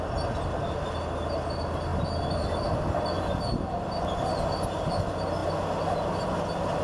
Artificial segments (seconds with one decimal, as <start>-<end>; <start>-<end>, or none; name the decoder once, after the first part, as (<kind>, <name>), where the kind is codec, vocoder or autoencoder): none